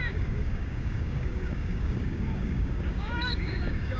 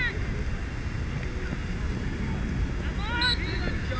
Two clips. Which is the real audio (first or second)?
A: second